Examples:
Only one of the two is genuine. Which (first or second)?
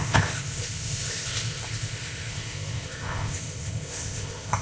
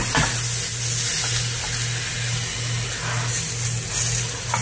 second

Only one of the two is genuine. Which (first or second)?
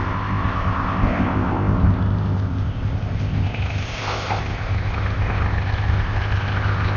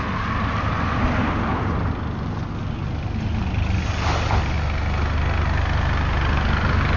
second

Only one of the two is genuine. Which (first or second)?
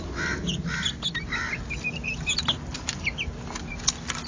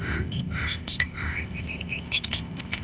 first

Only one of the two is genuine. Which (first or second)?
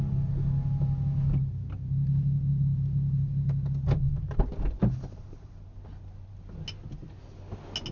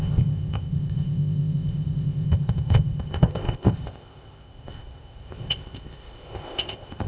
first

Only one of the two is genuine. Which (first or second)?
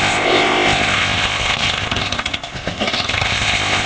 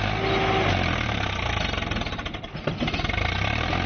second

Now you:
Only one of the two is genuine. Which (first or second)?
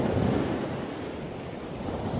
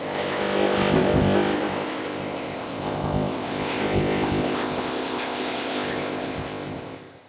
first